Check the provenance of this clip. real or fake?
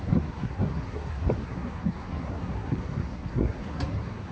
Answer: fake